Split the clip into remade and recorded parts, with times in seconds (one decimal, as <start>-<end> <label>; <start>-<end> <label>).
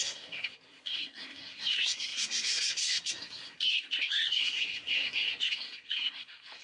0.0-6.6 remade